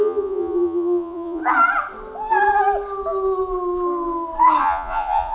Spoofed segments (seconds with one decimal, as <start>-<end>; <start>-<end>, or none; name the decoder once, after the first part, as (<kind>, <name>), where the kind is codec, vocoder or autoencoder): 0.0-1.4 (vocoder, Vocos); 4.6-5.3